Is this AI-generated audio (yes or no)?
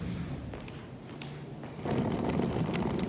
no